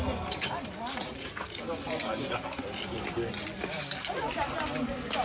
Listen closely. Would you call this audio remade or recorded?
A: recorded